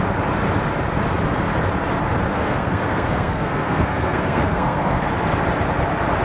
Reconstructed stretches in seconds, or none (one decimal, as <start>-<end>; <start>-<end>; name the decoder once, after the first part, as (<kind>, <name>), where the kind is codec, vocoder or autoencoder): 2.3-5.1 (codec, SNAC)